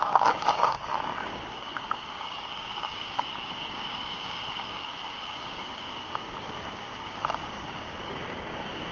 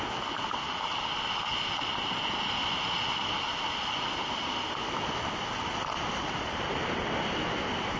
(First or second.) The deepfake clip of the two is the first